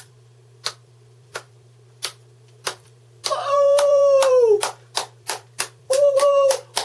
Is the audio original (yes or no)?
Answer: no